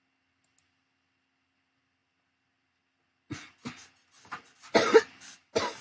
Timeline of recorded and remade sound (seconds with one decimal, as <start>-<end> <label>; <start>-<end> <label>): 0.0-5.8 recorded